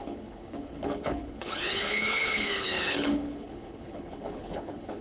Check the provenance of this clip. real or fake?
fake